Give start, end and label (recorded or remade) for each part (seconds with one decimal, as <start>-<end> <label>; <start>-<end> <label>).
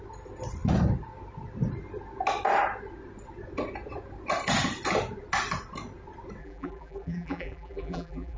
0.0-6.4 recorded; 6.4-8.4 remade